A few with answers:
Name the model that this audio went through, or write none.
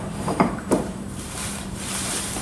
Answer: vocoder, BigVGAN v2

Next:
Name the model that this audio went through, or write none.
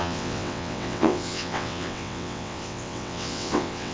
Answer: vocoder, WaveNeXt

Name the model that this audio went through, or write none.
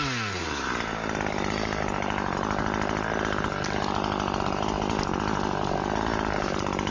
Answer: none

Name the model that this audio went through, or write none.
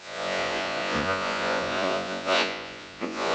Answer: vocoder, Vocos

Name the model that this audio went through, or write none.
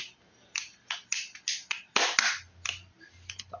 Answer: none